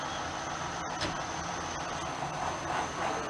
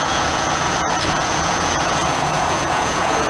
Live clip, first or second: first